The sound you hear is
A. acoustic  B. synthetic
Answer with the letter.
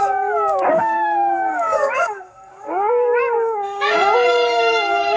B